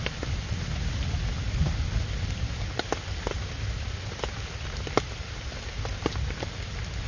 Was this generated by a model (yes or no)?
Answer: no